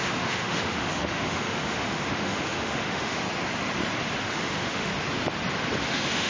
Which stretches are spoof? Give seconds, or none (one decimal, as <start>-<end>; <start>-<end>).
0.0-3.2; 4.3-4.9; 5.8-6.3